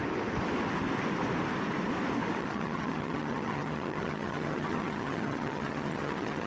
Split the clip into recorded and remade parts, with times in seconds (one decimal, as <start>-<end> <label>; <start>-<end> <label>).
0.0-2.4 recorded; 2.4-6.5 remade